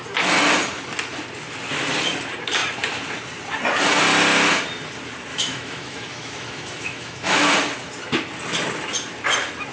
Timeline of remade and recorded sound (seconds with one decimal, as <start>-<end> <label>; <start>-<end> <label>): 0.0-5.3 recorded; 5.3-7.4 remade; 7.4-9.7 recorded